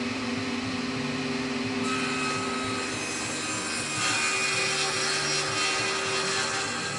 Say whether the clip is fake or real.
real